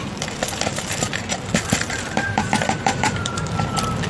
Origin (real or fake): fake